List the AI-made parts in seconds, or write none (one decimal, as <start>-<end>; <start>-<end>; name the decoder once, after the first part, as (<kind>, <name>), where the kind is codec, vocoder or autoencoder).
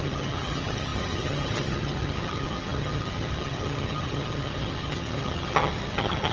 0.0-6.3 (vocoder, HiFi-GAN)